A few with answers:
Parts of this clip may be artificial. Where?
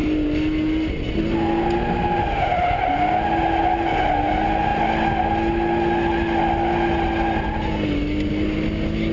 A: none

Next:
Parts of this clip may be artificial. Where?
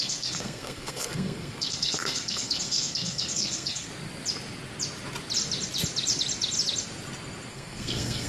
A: 0.0-3.9 (codec, SNAC); 7.5-8.3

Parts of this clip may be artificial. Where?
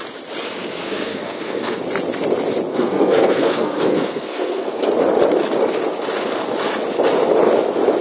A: 0.6-1.8 (codec, SNAC); 2.7-4.9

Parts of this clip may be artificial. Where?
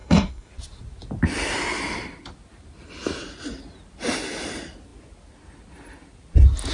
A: 0.0-0.5 (codec, SNAC)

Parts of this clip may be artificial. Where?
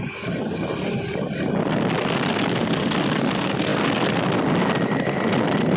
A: none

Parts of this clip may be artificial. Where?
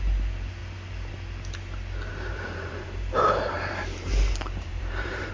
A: 2.1-5.3 (vocoder, BigVGAN v2)